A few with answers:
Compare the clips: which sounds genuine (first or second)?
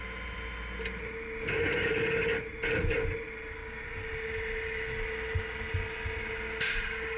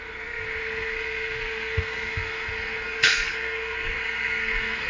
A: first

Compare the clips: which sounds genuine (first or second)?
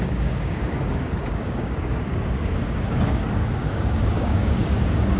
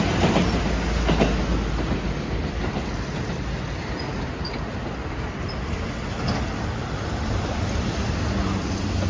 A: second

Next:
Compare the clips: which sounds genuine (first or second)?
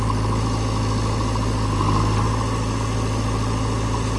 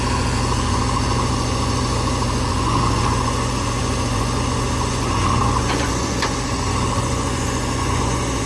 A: first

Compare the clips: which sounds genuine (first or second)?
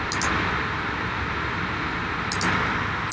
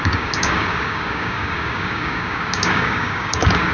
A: first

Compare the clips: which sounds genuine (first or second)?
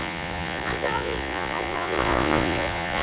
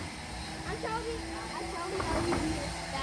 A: second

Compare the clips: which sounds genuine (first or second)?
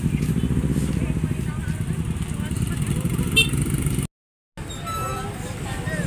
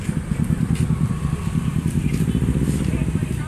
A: first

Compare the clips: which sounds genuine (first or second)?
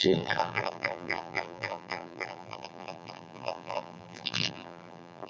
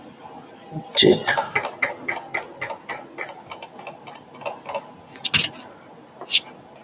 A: second